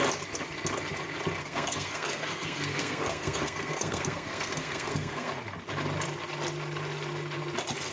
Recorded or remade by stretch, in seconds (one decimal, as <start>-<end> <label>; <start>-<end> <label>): 0.0-1.4 recorded; 1.4-5.3 remade; 5.3-7.9 recorded